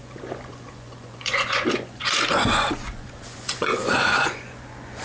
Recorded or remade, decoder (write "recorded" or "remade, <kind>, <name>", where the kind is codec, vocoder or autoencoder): remade, vocoder, Vocos